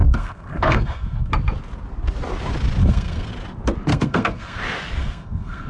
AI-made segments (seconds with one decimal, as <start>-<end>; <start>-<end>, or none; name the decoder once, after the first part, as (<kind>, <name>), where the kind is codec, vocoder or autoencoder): 0.0-1.3 (codec, SNAC); 2.8-3.3; 3.9-4.6; 5.0-5.7